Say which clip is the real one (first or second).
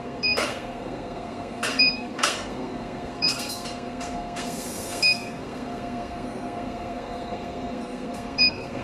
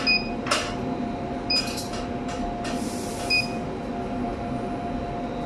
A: second